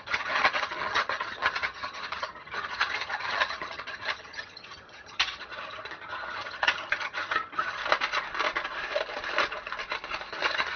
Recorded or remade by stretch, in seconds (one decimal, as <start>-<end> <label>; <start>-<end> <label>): 0.0-7.8 remade; 7.8-10.3 recorded; 10.3-10.8 remade